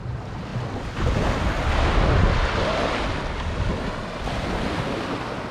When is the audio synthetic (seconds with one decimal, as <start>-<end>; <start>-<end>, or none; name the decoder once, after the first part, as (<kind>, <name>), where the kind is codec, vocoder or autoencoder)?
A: none